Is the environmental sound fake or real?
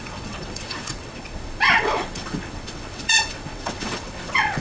fake